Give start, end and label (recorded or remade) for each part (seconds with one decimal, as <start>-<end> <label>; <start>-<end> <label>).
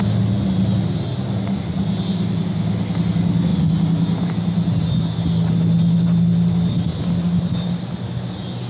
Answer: 0.0-8.7 recorded